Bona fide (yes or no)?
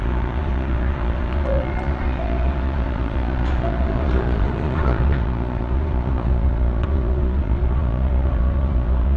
no